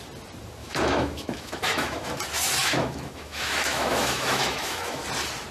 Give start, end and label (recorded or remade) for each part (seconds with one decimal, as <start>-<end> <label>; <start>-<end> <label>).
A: 0.0-0.6 recorded; 0.6-2.1 remade; 2.1-2.6 recorded; 2.6-5.0 remade; 5.0-5.5 recorded